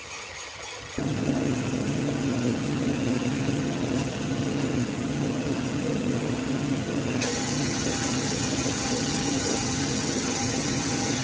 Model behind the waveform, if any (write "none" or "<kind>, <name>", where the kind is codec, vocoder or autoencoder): vocoder, HiFi-GAN